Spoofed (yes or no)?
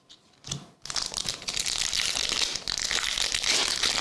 no